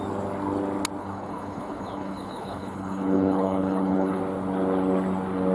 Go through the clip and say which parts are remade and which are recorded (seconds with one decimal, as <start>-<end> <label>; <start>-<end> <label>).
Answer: 0.0-1.0 recorded; 1.0-4.2 remade; 4.2-5.5 recorded